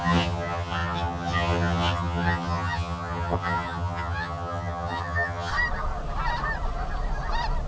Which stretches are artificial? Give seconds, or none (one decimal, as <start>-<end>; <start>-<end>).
0.0-5.5